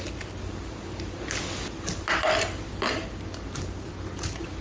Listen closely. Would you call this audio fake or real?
real